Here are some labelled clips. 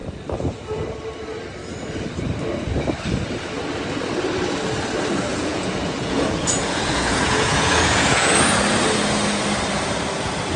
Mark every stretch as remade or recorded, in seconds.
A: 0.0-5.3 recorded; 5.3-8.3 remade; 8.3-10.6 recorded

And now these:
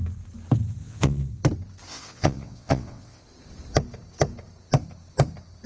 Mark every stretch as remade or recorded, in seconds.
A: 0.0-0.8 recorded; 0.8-1.4 remade; 1.4-1.9 recorded; 1.9-3.2 remade; 3.2-5.7 recorded

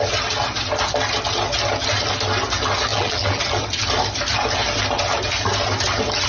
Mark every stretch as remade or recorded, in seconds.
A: 0.0-2.9 recorded; 2.9-3.4 remade; 3.4-6.3 recorded

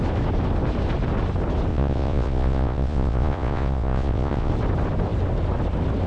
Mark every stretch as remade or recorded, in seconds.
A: 0.0-1.7 recorded; 1.7-4.5 remade; 4.5-6.1 recorded

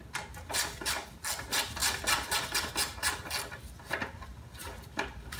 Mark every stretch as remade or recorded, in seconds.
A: 0.0-5.4 recorded

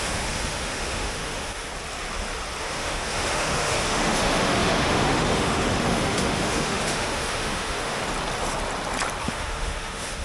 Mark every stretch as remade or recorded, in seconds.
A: 0.0-1.7 remade; 1.7-2.6 recorded; 2.6-8.0 remade; 8.0-9.2 recorded; 9.2-10.2 remade